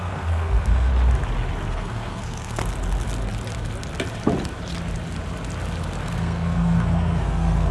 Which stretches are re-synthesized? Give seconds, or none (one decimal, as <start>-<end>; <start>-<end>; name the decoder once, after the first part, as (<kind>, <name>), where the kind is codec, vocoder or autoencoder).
0.0-0.9 (codec, SNAC); 1.7-2.6; 6.0-7.7